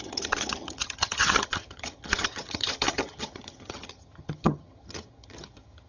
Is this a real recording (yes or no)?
no